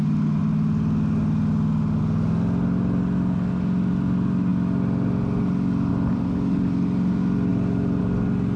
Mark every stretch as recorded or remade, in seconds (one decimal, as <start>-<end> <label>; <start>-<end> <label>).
0.0-8.6 recorded